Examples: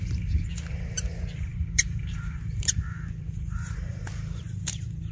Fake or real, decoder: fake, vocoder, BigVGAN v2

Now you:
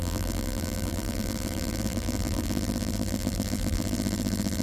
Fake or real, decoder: fake, vocoder, BigVGAN v2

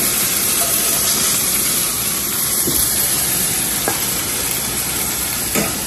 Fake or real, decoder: fake, vocoder, BigVGAN v2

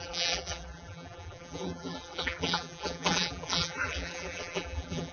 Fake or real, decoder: fake, vocoder, BigVGAN v2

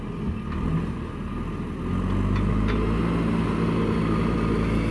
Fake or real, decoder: real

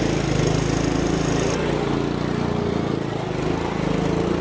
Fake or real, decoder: real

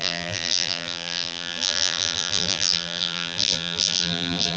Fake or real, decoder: fake, vocoder, BigVGAN v2